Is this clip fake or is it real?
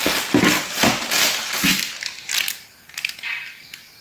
real